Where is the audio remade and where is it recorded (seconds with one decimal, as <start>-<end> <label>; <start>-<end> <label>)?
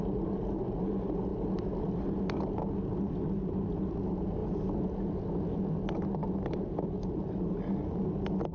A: 0.0-8.5 recorded